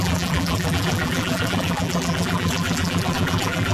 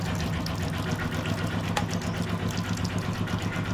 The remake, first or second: first